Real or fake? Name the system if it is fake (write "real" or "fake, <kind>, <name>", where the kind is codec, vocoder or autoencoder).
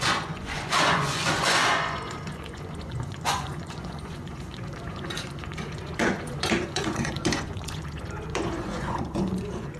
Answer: fake, vocoder, Vocos